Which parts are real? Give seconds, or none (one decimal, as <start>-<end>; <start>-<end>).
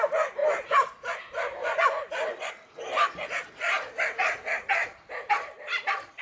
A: 0.0-6.2